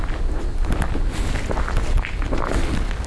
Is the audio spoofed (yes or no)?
no